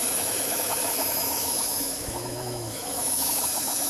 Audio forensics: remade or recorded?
remade